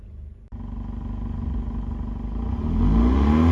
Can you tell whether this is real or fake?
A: real